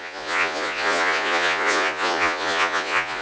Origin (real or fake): fake